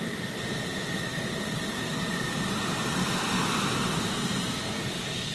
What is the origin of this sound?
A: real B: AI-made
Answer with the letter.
A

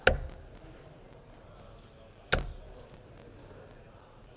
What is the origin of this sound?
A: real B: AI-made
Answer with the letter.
A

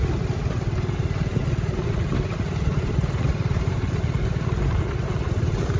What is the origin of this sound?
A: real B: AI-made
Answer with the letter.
B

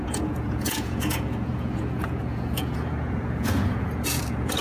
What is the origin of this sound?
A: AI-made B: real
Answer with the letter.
A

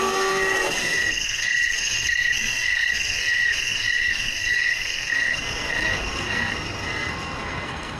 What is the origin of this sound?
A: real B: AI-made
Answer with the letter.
B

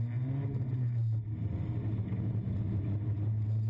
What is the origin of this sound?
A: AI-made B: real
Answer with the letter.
B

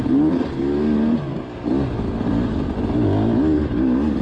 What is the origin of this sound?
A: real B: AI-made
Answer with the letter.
A